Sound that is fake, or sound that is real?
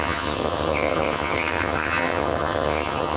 fake